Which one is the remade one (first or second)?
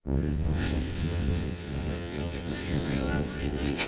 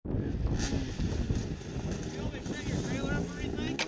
first